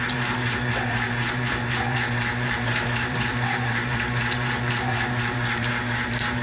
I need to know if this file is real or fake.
fake